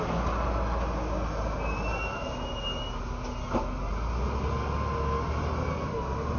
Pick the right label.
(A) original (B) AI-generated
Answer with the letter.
A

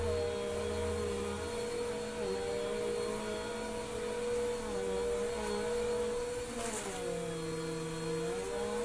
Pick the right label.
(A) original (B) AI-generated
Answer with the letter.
A